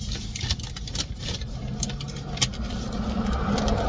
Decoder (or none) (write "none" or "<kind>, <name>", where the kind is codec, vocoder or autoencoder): none